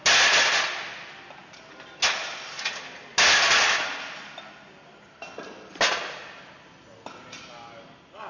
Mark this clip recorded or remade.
recorded